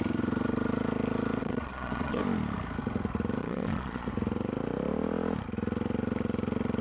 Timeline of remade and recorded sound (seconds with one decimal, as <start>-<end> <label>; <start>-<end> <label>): 0.0-1.4 recorded; 1.4-2.2 remade; 2.2-3.4 recorded; 3.4-4.1 remade; 4.1-6.8 recorded